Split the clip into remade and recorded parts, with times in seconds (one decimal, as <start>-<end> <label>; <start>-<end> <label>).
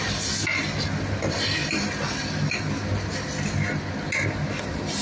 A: 0.0-5.0 recorded